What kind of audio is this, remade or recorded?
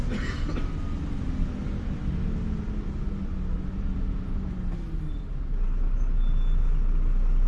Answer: recorded